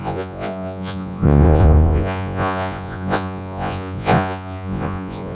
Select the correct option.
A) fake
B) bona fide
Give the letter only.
A